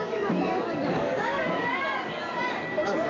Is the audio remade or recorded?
remade